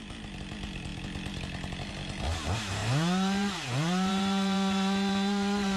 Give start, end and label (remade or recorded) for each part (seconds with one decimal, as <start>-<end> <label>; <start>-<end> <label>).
0.0-2.8 recorded; 2.8-5.8 remade